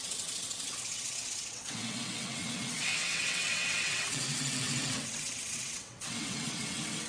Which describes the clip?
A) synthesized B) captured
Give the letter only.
A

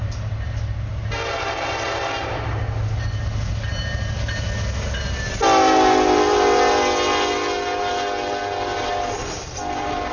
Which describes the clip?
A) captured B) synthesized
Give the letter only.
A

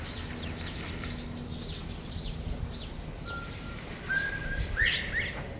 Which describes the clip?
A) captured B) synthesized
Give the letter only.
A